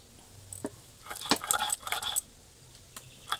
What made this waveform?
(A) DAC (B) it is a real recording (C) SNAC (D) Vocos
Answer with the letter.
B